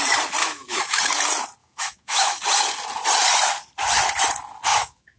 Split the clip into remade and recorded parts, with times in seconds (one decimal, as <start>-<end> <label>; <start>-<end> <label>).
0.0-0.4 recorded; 0.4-1.0 remade; 1.0-1.6 recorded; 1.6-2.4 remade; 2.4-4.7 recorded; 4.7-5.2 remade